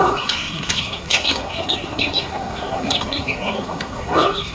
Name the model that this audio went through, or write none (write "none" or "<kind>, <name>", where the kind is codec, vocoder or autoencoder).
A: codec, SNAC